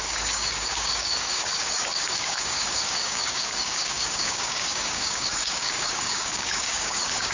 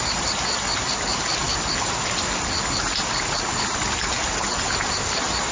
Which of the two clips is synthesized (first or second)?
first